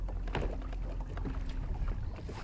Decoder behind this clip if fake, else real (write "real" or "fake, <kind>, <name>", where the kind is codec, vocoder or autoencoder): real